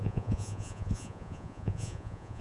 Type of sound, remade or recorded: remade